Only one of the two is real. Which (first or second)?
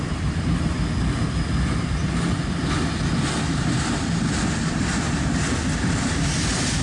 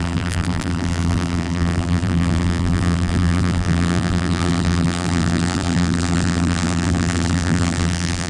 first